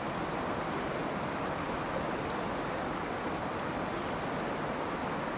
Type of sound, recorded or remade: recorded